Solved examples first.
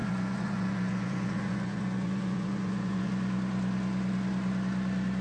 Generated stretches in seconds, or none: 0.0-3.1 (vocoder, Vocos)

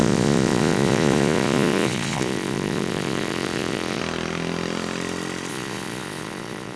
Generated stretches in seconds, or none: 0.0-4.0 (vocoder, Vocos); 5.5-6.8